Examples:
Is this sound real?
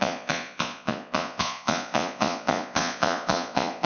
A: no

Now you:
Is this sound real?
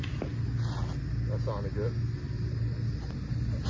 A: yes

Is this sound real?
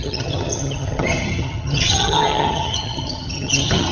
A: no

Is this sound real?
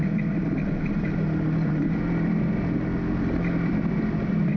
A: yes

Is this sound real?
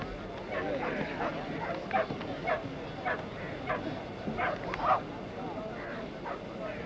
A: yes